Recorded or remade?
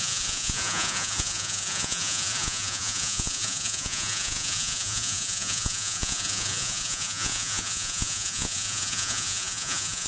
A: remade